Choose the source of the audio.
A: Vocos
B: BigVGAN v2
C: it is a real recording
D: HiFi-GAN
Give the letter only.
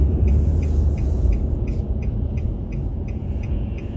A